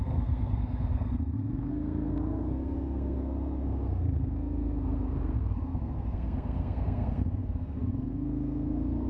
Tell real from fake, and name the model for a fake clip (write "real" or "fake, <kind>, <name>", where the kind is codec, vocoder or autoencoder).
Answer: fake, codec, SNAC